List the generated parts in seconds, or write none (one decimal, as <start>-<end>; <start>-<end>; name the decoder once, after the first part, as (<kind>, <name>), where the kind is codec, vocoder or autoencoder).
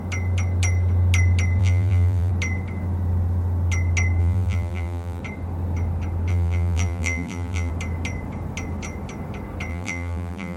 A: 1.6-2.3 (vocoder, BigVGAN v2); 4.2-5.2; 6.3-7.7; 9.7-10.6